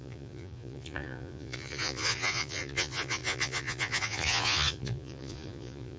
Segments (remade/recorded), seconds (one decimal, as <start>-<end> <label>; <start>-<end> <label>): 0.0-6.0 remade